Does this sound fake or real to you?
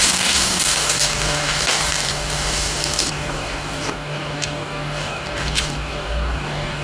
fake